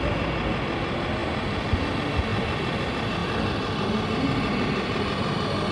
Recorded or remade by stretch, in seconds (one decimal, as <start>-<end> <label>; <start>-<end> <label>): 0.0-5.7 recorded

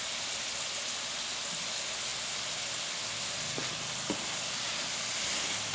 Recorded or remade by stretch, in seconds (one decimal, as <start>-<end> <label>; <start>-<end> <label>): 0.0-5.7 recorded

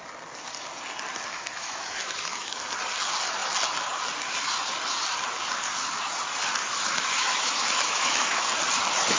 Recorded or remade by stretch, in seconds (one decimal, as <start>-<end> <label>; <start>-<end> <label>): 0.0-1.3 recorded; 1.3-2.6 remade; 2.6-6.6 recorded; 6.6-8.5 remade; 8.5-9.2 recorded

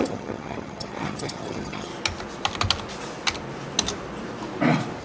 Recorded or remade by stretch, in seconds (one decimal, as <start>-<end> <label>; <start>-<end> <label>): 0.0-1.9 remade; 1.9-5.0 recorded

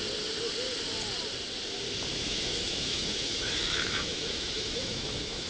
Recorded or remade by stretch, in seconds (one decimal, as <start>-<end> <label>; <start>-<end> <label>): 0.0-2.1 recorded; 2.1-5.5 remade

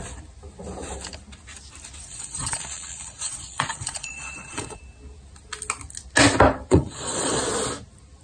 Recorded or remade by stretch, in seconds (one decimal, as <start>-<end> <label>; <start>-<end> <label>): 0.0-2.0 recorded; 2.0-4.8 remade; 4.8-6.7 recorded; 6.7-7.4 remade; 7.4-8.2 recorded